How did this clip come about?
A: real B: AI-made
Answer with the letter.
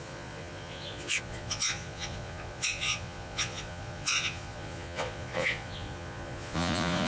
B